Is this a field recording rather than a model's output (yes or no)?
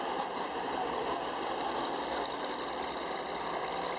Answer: yes